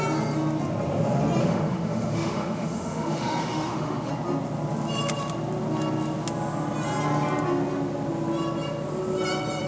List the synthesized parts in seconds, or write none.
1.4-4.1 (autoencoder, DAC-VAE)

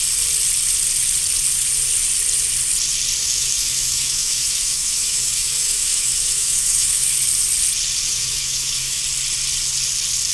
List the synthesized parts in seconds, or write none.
3.2-7.1 (autoencoder, DAC-VAE); 8.1-9.0

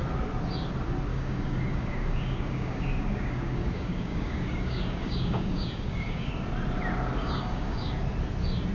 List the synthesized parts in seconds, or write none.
1.1-6.3 (codec, DAC); 7.2-7.9

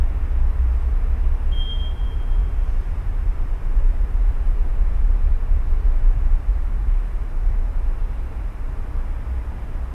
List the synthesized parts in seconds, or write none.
2.4-3.1 (vocoder, BigVGAN v2); 3.6-4.7; 5.3-8.8

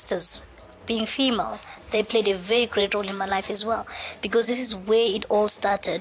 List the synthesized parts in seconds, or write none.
1.8-3.4 (vocoder, Vocos)

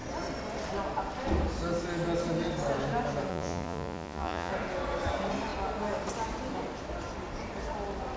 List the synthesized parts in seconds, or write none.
3.3-4.5 (vocoder, Vocos)